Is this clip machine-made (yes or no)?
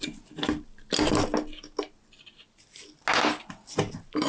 no